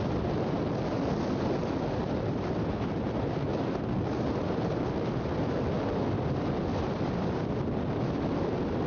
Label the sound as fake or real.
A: real